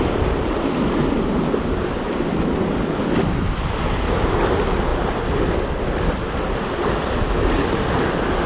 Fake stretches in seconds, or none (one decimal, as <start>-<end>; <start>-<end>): none